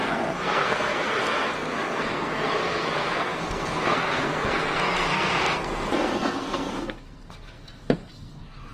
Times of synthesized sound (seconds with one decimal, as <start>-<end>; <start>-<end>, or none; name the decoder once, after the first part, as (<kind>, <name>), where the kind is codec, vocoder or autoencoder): 0.0-8.7 (codec, SNAC)